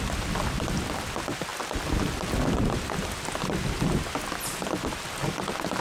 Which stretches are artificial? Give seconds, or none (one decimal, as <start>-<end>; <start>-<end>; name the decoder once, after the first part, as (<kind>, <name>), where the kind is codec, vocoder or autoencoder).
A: none